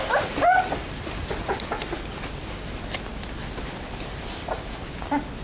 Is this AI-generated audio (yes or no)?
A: no